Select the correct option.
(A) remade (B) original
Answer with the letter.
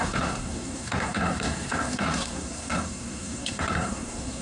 A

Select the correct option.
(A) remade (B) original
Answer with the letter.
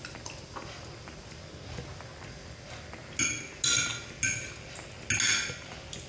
B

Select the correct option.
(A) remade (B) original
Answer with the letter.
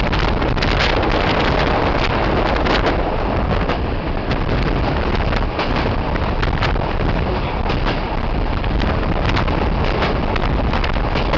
B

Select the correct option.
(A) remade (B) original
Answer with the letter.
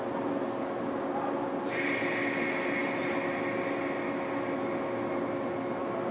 B